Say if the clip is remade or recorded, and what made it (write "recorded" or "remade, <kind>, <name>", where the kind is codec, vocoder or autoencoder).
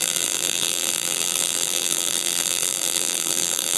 remade, vocoder, BigVGAN v2